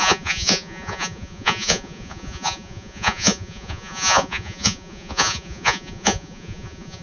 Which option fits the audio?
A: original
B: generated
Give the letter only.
B